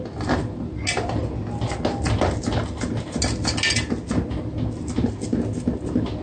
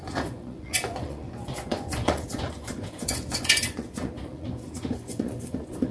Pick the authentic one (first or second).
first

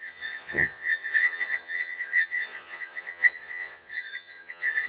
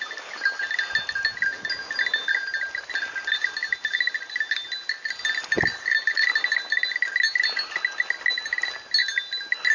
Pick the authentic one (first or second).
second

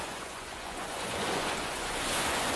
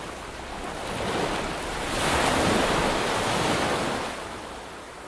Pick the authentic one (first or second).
second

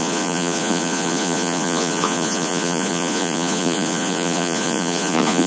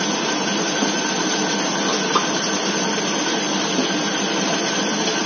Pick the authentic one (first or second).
second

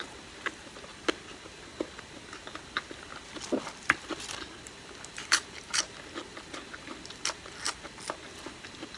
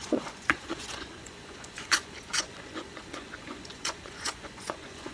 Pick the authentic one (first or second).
first